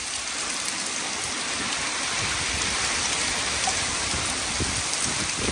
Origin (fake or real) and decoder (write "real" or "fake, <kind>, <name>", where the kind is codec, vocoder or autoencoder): fake, vocoder, BigVGAN v2